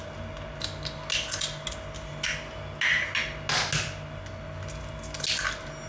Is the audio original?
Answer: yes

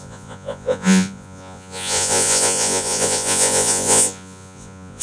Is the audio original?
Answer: no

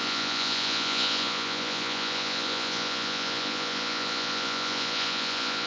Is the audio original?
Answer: no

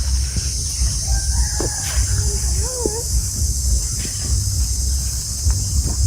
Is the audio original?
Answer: yes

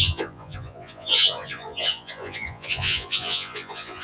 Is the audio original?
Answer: no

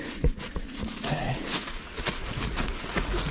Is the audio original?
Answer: no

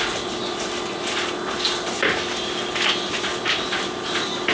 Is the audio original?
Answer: yes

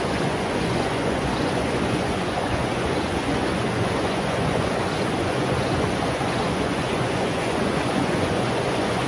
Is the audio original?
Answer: no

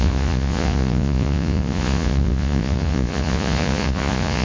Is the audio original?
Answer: no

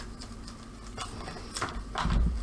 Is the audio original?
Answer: yes